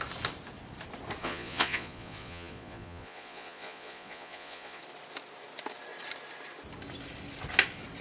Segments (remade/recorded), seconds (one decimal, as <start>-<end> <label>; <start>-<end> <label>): 0.0-1.2 recorded; 1.2-4.8 remade; 4.8-8.0 recorded